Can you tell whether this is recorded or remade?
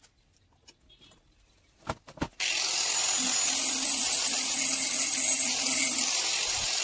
recorded